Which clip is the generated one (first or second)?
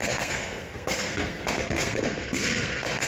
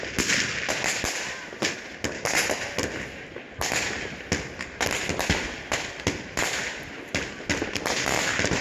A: first